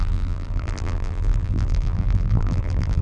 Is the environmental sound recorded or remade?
remade